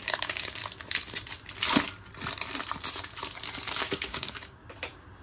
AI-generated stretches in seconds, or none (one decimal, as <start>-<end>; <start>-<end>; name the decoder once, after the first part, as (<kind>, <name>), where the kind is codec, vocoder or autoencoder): 0.0-0.6 (codec, DAC); 3.7-4.6